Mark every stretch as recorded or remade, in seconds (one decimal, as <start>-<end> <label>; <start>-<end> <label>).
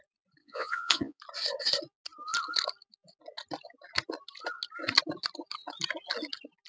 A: 0.0-0.4 recorded; 0.4-1.2 remade; 1.2-6.7 recorded